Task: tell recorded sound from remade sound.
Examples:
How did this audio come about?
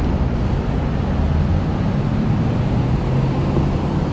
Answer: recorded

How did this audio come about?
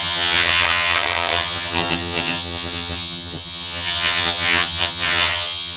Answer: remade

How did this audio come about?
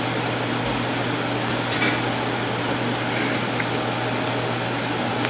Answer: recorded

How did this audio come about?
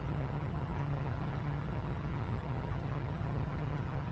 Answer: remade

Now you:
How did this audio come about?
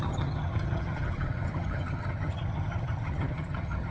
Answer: remade